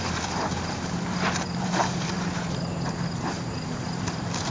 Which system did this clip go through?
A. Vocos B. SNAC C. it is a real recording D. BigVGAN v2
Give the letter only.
D